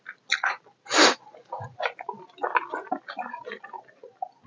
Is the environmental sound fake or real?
real